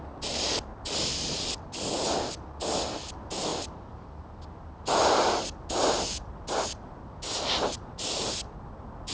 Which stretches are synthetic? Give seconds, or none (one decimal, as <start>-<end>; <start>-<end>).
none